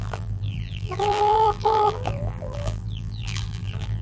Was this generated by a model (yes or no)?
yes